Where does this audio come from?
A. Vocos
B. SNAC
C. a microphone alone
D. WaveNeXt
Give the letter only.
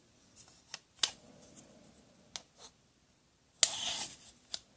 C